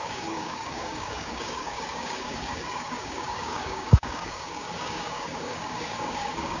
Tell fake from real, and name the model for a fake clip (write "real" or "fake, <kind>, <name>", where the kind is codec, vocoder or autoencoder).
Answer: fake, codec, DAC